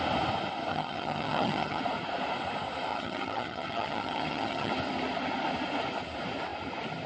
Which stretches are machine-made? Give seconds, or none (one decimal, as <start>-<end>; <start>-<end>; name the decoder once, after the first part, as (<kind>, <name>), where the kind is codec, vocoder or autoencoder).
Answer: 0.7-1.8 (vocoder, HiFi-GAN); 2.9-4.7